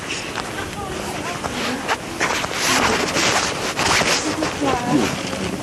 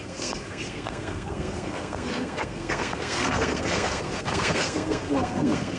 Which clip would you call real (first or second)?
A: first